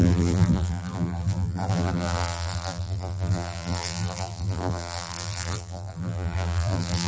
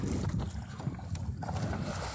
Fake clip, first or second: first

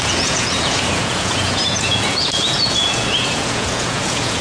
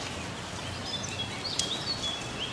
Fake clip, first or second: first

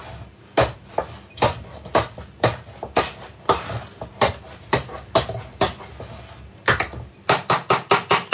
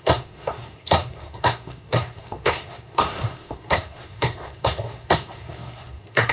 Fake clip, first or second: second